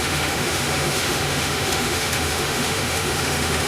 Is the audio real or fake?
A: fake